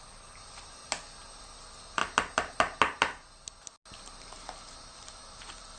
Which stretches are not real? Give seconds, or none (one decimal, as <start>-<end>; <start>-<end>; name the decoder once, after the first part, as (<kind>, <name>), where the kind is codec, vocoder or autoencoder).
0.0-0.8 (vocoder, BigVGAN v2); 1.4-2.0; 4.0-5.8